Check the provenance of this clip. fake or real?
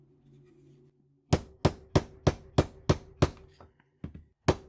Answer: real